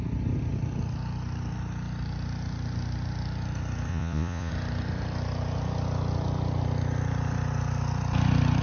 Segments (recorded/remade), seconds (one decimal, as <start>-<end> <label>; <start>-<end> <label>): 0.0-3.9 recorded; 3.9-4.5 remade; 4.5-8.6 recorded